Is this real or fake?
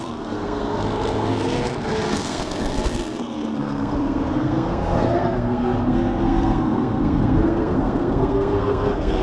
fake